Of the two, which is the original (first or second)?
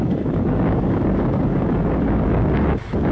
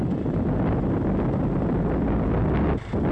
second